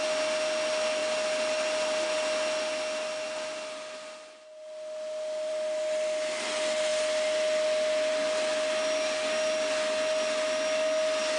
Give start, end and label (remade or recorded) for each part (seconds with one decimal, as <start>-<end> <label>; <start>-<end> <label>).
0.0-11.4 recorded